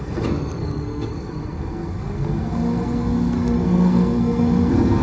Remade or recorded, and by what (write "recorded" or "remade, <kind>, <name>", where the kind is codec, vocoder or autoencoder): remade, codec, SNAC